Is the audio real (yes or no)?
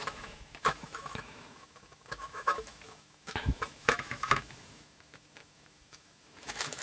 no